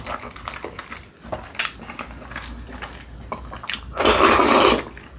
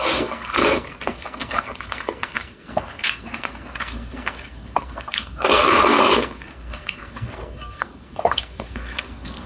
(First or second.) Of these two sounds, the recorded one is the first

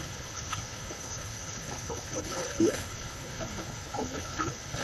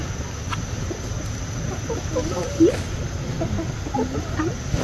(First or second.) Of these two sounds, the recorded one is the second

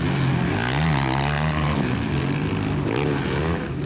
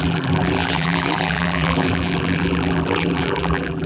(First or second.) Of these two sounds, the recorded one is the first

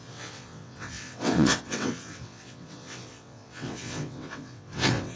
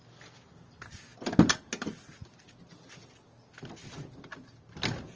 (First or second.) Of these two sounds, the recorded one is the second